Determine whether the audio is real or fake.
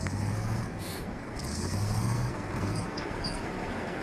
fake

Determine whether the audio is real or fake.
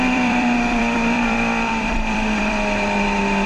fake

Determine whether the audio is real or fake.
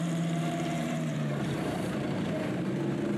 fake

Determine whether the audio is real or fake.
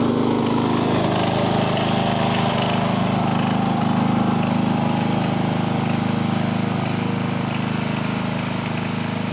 real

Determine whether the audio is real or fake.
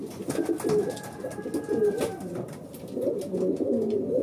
real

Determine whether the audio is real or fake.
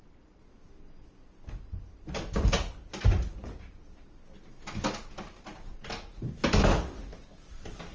real